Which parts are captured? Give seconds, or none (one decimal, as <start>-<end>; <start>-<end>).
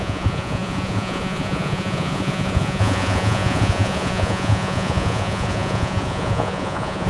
none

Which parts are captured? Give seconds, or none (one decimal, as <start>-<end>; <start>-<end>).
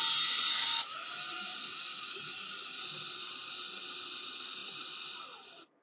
0.0-0.5; 2.8-5.8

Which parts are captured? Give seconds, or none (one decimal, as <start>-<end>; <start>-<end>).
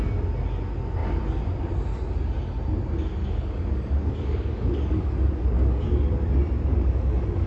0.0-3.2; 6.1-6.7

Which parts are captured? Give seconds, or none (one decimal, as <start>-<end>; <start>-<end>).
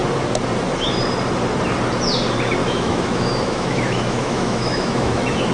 0.0-2.6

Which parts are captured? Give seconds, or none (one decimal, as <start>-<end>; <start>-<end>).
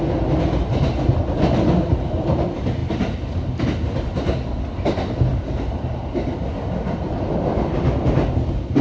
0.0-8.8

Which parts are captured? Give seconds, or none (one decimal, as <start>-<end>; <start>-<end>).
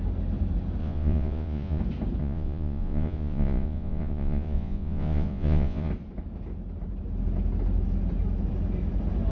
0.0-0.8; 1.8-2.2; 5.9-9.3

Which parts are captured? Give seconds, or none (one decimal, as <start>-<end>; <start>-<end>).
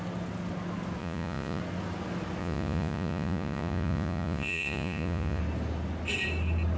0.0-1.0; 1.6-2.4; 5.4-6.8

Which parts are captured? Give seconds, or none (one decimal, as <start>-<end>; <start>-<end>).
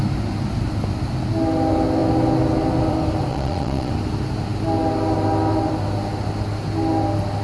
0.0-3.3; 3.9-7.4